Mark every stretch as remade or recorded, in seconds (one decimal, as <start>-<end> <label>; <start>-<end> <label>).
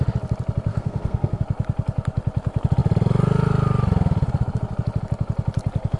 0.0-0.7 recorded; 0.7-1.4 remade; 1.4-6.0 recorded